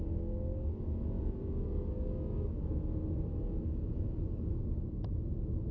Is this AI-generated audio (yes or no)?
no